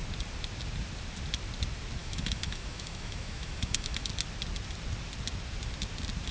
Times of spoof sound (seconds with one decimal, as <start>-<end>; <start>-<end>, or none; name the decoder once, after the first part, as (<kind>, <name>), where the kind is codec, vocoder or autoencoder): 2.0-4.1 (autoencoder, DAC-VAE)